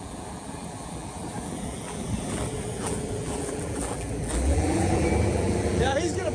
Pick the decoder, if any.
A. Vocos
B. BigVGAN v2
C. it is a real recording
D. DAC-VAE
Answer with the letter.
B